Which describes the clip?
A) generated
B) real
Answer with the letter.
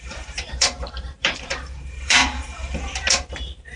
A